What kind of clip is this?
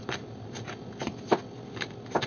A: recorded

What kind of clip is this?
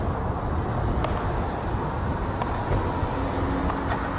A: recorded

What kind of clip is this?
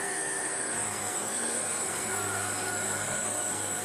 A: remade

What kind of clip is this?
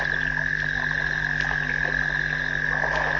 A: recorded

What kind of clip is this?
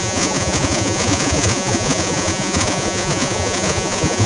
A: remade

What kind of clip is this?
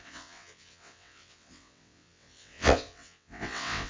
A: remade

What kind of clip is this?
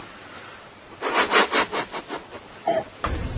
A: recorded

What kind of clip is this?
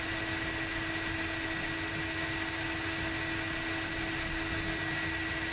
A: recorded